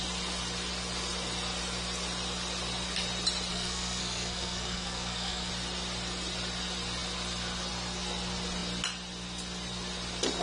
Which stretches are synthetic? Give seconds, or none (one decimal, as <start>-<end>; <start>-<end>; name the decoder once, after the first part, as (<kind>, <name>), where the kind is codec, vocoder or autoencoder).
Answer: 3.5-5.5 (codec, SNAC)